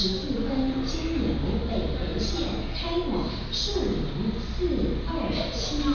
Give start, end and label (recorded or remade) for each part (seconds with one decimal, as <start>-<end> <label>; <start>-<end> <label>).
0.0-5.9 recorded